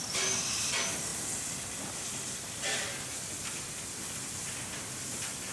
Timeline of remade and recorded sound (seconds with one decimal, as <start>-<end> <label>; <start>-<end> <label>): 0.0-5.5 recorded